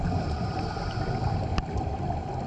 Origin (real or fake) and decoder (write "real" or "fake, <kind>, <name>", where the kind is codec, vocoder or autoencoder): real